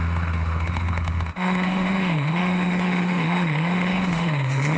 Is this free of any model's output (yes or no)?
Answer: no